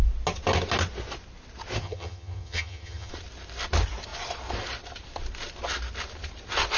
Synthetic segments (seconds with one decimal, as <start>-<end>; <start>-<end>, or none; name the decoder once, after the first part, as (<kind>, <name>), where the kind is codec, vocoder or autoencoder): 1.8-3.1 (vocoder, HiFi-GAN)